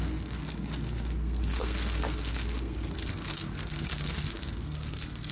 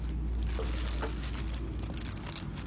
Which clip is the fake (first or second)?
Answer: first